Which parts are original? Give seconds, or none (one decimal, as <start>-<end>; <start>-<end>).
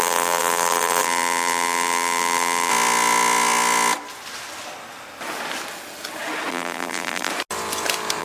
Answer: 2.7-6.5; 7.3-8.2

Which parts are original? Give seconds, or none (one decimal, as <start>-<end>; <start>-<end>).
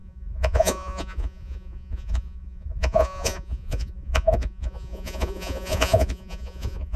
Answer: none